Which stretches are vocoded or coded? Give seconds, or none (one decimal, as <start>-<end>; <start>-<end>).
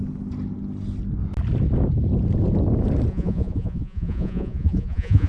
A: 3.1-5.3